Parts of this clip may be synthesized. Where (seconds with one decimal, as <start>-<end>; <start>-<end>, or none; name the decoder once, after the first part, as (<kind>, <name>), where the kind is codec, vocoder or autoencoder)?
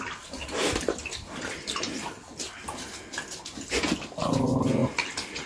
0.4-1.0 (vocoder, BigVGAN v2)